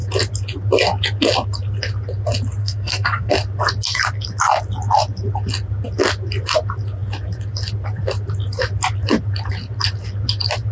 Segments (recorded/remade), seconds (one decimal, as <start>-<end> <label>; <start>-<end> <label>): 0.0-2.6 recorded; 2.6-3.3 remade; 3.3-10.7 recorded